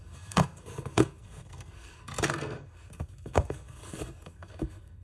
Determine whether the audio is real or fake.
fake